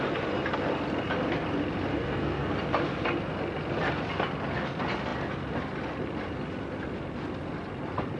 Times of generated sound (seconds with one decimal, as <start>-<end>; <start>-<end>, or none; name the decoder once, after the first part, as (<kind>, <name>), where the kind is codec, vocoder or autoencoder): 1.9-2.5 (codec, SNAC)